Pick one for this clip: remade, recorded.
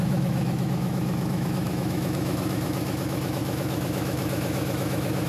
remade